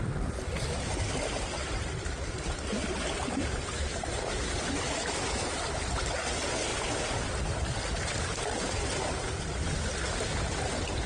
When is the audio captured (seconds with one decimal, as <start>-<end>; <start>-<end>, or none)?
0.0-11.1